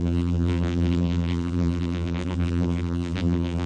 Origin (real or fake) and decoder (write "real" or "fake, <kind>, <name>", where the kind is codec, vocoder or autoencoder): fake, vocoder, BigVGAN v2